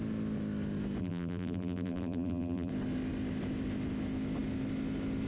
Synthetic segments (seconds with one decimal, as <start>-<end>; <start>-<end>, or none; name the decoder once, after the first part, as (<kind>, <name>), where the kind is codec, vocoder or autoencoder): 1.0-2.7 (vocoder, BigVGAN v2)